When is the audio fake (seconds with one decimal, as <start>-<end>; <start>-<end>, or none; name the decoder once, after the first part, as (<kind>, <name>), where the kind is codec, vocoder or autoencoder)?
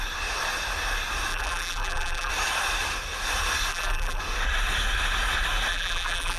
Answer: 1.3-2.3 (vocoder, BigVGAN v2); 3.7-4.2; 5.7-6.4